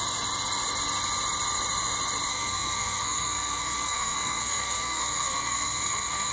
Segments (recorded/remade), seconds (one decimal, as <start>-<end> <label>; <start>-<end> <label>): 0.0-2.3 recorded; 2.3-6.3 remade